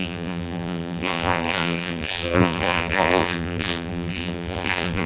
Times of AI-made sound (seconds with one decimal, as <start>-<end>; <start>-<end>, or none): 0.0-5.1